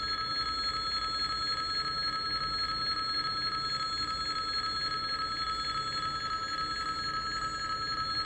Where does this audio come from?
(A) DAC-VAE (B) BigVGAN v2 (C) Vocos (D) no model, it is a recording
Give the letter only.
D